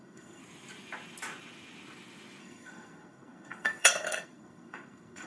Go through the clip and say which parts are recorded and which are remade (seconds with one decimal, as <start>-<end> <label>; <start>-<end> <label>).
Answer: 0.0-0.4 remade; 0.4-2.4 recorded; 2.4-5.3 remade